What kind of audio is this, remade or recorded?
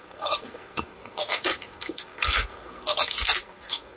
remade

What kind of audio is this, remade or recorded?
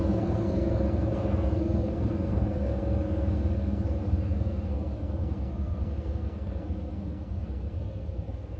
remade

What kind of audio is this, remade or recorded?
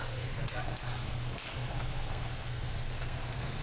remade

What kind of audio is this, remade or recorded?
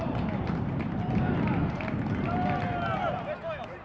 recorded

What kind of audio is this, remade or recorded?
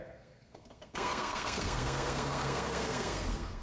remade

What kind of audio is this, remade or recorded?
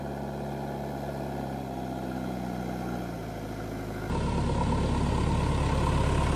recorded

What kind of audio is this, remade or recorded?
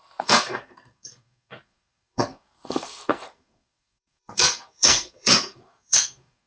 remade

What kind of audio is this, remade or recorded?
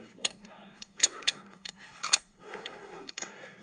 remade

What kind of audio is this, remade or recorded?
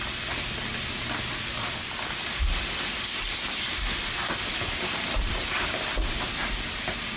recorded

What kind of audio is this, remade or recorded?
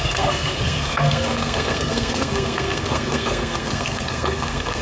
remade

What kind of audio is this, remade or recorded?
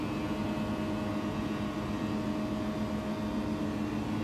recorded